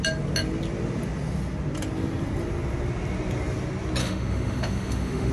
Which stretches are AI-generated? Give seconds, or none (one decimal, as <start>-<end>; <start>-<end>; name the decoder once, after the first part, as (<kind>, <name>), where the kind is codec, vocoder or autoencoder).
4.0-5.3 (autoencoder, DAC-VAE)

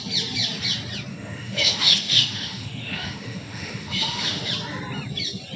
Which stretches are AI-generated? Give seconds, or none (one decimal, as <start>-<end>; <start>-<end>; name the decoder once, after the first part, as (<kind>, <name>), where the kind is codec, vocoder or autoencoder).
1.1-4.5 (autoencoder, DAC-VAE)

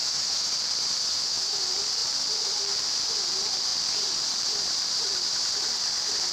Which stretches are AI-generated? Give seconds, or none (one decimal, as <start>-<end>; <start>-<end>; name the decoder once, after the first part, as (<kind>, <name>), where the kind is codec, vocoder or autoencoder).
0.0-0.5 (autoencoder, DAC-VAE); 1.1-1.6